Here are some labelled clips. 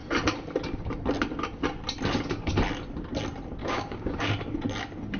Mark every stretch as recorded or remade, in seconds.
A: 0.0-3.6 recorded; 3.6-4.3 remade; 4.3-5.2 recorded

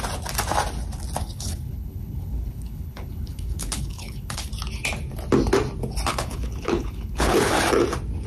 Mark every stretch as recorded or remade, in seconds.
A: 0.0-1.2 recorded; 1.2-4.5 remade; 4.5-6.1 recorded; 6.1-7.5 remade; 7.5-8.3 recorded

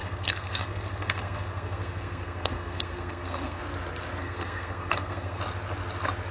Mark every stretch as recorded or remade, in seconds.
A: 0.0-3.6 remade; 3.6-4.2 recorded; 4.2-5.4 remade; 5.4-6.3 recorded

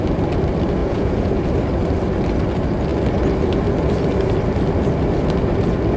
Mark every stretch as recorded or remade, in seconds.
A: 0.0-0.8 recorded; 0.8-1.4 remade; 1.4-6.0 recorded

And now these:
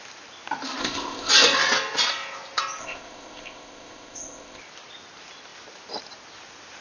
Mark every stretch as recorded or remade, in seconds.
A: 0.0-0.8 recorded; 0.8-1.3 remade; 1.3-2.8 recorded; 2.8-4.6 remade; 4.6-6.8 recorded

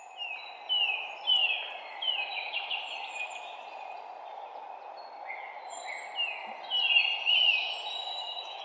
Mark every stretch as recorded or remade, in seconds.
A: 0.0-8.0 recorded; 8.0-8.6 remade

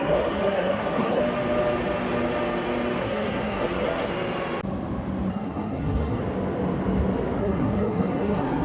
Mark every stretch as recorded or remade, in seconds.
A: 0.0-1.2 remade; 1.2-3.0 recorded; 3.0-4.1 remade; 4.1-5.3 recorded; 5.3-6.2 remade; 6.2-7.4 recorded; 7.4-8.6 remade